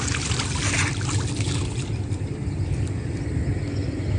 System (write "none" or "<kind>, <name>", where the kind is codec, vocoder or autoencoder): none